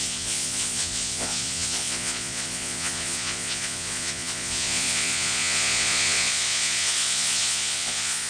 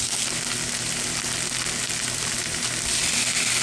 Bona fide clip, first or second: second